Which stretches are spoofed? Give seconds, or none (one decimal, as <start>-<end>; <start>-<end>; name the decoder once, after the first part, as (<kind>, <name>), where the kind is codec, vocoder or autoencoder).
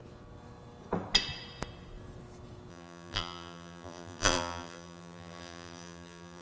2.7-6.4 (vocoder, BigVGAN v2)